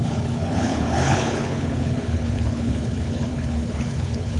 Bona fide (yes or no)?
no